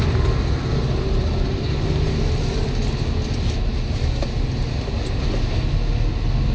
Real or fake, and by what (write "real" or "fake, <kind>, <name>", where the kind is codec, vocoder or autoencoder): real